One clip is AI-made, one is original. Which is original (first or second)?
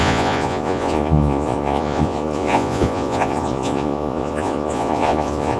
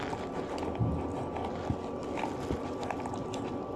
second